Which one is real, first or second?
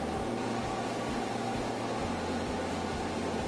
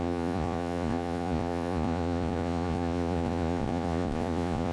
first